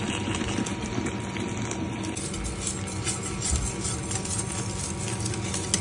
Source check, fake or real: real